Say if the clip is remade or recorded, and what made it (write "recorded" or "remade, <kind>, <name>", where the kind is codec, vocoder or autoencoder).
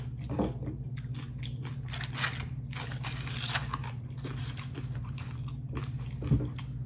recorded